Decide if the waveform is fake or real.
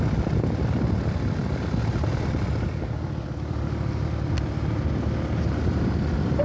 real